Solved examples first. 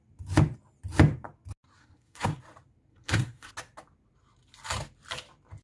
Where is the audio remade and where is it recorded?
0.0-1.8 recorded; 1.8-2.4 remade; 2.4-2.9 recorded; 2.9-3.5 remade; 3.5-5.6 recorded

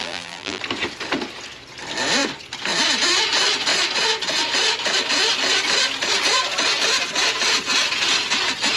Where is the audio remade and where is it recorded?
0.0-0.6 remade; 0.6-8.8 recorded

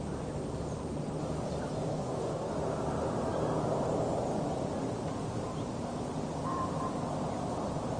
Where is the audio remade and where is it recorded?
0.0-1.9 recorded; 1.9-2.5 remade; 2.5-8.0 recorded

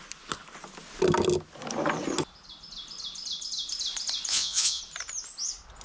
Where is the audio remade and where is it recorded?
0.0-4.3 recorded; 4.3-4.8 remade; 4.8-5.8 recorded

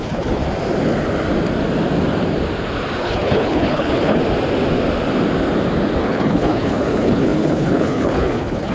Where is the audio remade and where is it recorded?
0.0-0.4 remade; 0.4-3.0 recorded; 3.0-4.2 remade; 4.2-6.0 recorded; 6.0-8.7 remade

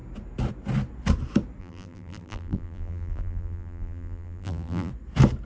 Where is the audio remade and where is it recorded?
0.0-1.6 recorded; 1.6-4.9 remade; 4.9-5.5 recorded

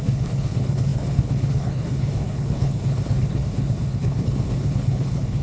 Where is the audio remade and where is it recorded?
0.0-5.4 remade